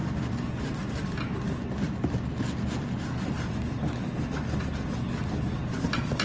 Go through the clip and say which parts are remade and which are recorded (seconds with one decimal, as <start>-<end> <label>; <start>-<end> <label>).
0.0-6.2 recorded